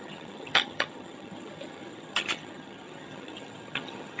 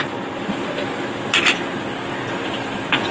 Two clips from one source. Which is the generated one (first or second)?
first